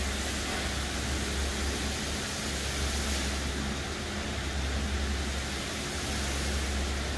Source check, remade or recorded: recorded